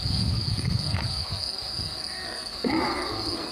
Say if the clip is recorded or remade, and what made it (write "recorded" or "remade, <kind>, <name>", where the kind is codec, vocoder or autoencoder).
remade, codec, SNAC